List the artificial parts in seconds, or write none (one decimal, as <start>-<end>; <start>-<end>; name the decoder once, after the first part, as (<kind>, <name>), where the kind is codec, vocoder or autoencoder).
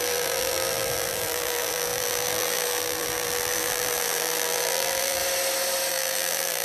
0.0-5.2 (vocoder, BigVGAN v2); 5.9-6.6